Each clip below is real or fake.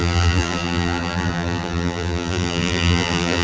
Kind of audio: fake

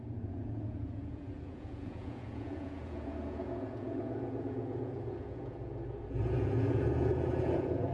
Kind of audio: fake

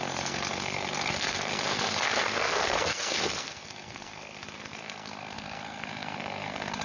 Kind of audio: fake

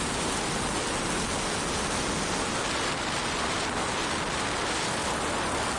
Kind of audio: real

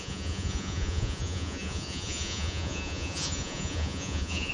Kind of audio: fake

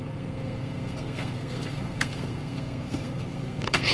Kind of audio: fake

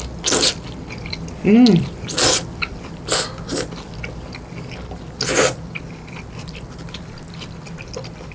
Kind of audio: real